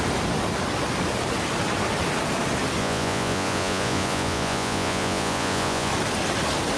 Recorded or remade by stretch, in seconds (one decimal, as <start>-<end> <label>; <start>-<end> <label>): 0.0-2.8 recorded; 2.8-5.9 remade; 5.9-6.8 recorded